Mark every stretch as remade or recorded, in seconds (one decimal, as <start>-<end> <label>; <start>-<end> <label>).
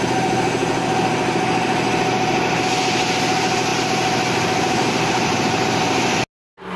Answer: 0.0-6.8 recorded